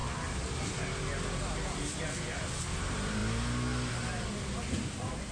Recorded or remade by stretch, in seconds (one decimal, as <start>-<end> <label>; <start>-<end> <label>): 0.0-5.3 recorded